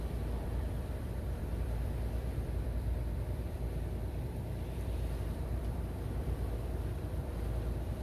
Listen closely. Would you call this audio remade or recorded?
remade